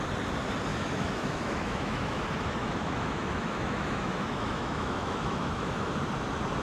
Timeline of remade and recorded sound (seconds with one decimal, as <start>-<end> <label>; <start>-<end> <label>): 0.0-0.7 recorded; 0.7-2.2 remade; 2.2-2.6 recorded; 2.6-5.9 remade; 5.9-6.6 recorded